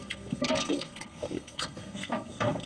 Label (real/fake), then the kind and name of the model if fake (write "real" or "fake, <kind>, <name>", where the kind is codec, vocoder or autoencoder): fake, codec, SNAC